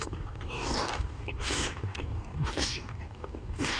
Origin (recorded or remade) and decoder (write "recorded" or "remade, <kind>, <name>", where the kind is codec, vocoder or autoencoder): remade, codec, DAC